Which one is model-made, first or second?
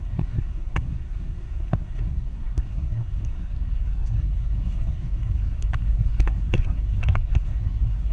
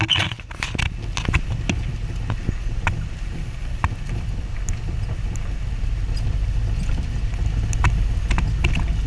first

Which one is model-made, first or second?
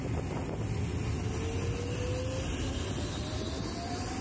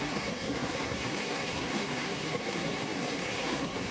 second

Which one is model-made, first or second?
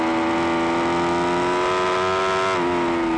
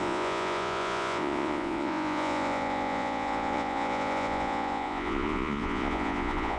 second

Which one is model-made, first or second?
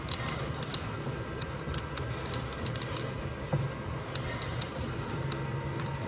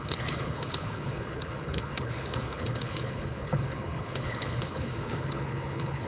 second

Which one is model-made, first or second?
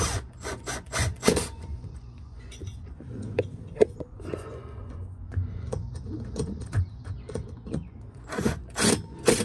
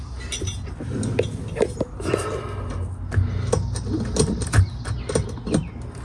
first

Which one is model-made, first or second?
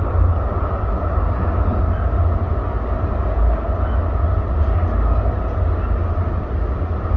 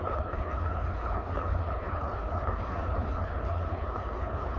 second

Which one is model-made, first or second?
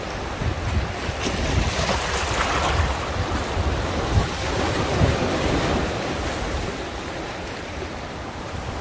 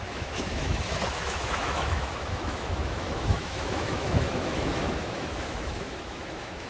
second